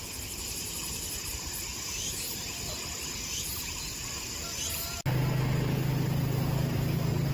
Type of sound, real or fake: real